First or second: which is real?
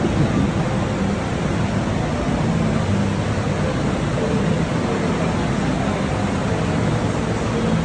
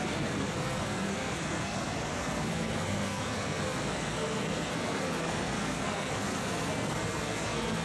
first